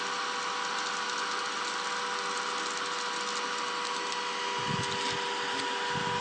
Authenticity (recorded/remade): recorded